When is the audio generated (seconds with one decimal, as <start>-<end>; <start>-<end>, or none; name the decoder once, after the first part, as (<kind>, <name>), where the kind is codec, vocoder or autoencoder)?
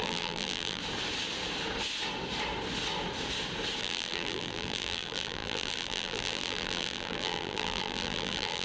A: 0.0-0.8 (vocoder, BigVGAN v2); 3.8-8.6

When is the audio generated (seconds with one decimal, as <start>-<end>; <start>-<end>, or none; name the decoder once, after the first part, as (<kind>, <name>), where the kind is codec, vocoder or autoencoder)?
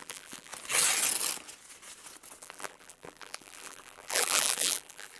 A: 0.0-0.5 (vocoder, BigVGAN v2); 2.4-5.2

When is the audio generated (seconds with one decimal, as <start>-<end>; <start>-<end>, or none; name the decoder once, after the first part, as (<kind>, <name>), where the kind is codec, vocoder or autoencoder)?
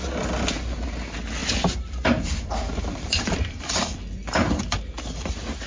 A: 1.4-4.8 (vocoder, BigVGAN v2)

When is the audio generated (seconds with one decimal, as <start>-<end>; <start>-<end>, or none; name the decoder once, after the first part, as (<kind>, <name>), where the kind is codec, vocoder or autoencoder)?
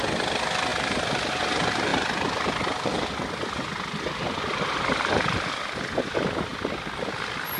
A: none